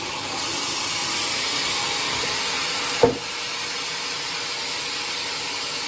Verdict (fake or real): real